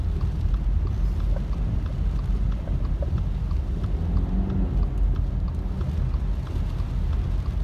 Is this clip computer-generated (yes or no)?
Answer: no